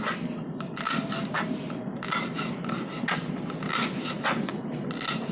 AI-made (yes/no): no